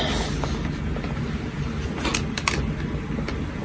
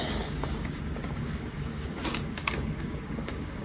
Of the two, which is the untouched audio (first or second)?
first